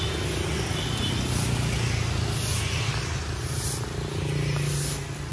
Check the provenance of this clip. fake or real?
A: real